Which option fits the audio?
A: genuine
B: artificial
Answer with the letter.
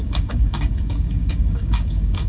B